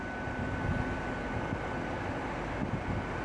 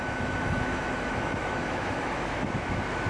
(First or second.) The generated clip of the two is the second